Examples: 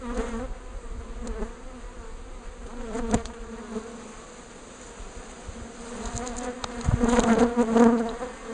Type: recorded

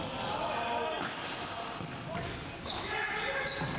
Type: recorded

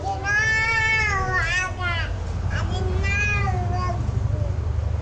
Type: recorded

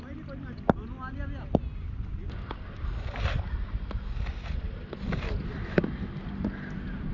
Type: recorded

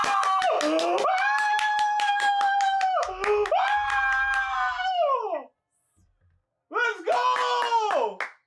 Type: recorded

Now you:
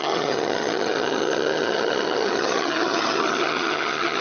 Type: remade